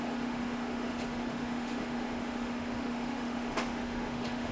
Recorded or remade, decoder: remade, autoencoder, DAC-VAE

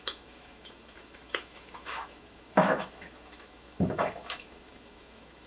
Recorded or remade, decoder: remade, autoencoder, DAC-VAE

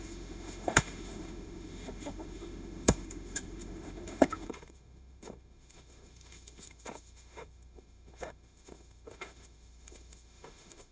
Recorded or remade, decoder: remade, autoencoder, DAC-VAE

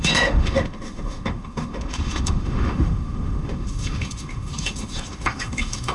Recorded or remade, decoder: remade, autoencoder, DAC-VAE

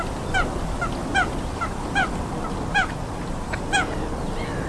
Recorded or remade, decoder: recorded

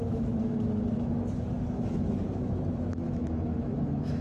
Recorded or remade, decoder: remade, autoencoder, DAC-VAE